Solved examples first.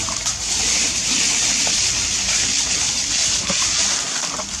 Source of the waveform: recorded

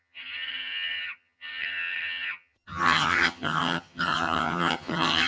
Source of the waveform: remade